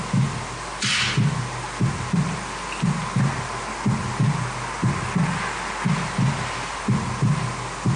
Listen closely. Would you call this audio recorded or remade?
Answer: recorded